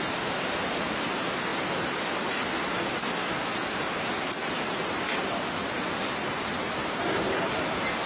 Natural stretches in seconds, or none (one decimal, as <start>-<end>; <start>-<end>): 0.0-8.1